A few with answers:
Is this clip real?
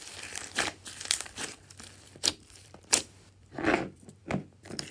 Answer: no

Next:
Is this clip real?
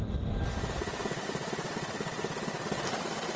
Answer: yes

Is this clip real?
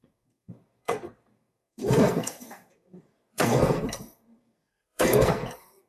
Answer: no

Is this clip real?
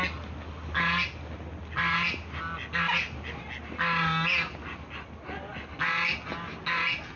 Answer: yes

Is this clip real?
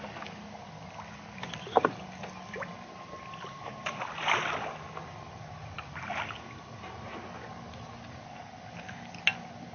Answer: yes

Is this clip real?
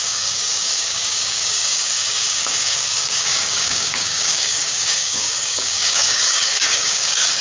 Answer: no